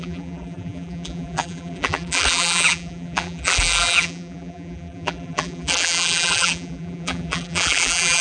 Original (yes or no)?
no